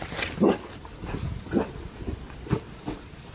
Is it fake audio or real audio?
fake